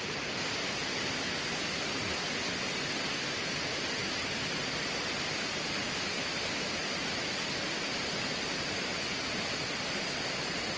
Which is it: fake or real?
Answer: real